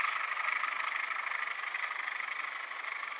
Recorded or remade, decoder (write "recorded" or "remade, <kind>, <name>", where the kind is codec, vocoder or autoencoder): recorded